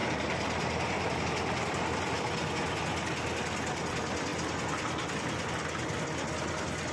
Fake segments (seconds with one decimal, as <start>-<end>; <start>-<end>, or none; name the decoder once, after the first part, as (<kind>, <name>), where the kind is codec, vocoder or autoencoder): 0.0-1.2 (vocoder, BigVGAN v2)